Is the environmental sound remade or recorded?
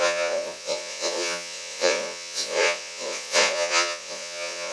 remade